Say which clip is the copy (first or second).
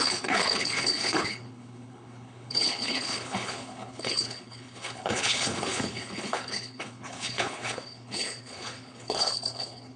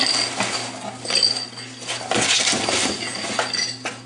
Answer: first